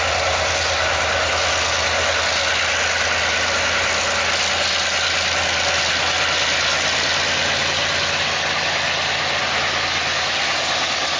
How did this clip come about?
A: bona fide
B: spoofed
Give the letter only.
A